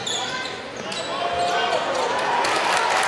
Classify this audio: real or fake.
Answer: real